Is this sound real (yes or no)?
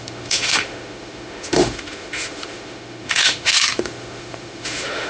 no